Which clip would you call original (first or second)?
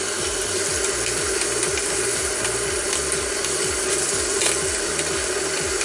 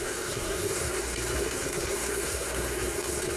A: first